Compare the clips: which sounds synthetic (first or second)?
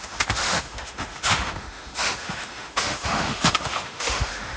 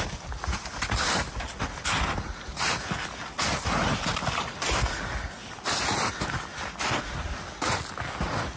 first